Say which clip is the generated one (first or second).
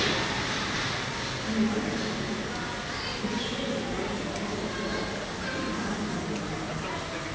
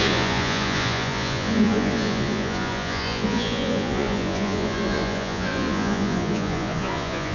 second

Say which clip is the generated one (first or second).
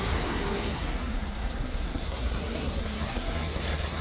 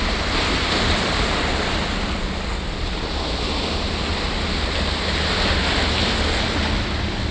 first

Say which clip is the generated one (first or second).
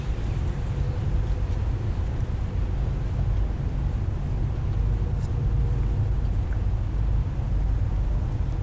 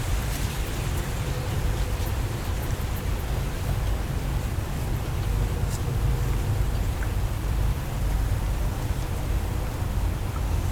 second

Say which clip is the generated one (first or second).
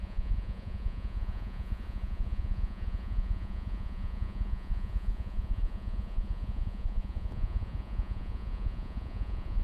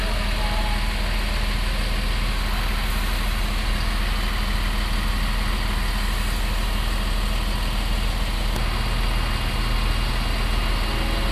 first